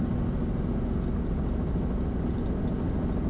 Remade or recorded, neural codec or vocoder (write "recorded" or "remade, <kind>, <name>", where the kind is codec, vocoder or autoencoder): recorded